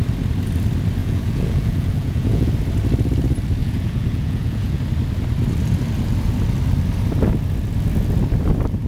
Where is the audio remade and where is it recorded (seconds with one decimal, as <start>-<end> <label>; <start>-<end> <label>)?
0.0-1.0 recorded; 1.0-2.5 remade; 2.5-3.6 recorded; 3.6-4.8 remade; 4.8-8.9 recorded